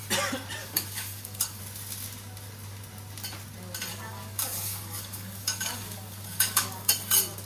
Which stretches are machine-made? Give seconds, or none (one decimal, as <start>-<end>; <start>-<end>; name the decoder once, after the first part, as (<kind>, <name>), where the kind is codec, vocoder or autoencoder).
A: 0.6-1.6 (codec, DAC); 3.9-6.9

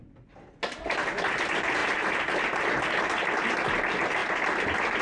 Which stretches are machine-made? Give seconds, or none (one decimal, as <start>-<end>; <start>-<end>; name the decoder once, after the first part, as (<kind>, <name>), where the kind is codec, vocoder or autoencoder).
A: none

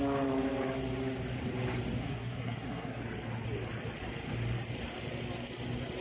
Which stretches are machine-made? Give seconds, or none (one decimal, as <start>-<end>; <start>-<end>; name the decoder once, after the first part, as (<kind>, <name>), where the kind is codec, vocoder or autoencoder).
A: 2.0-3.0 (codec, SNAC)